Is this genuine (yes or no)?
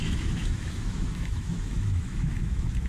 no